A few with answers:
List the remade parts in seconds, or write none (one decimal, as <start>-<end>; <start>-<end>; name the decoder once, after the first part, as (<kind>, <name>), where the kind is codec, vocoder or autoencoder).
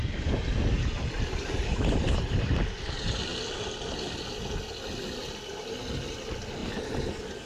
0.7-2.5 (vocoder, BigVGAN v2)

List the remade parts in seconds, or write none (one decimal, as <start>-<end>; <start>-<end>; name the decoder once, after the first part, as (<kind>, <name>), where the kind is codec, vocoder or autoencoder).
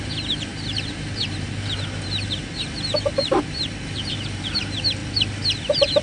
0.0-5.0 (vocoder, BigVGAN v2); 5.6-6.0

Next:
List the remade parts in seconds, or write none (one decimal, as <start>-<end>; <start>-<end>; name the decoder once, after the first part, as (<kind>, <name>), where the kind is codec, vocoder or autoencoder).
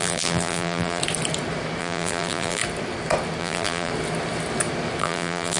0.0-1.0 (vocoder, BigVGAN v2); 1.8-2.6; 3.4-3.9; 5.0-5.6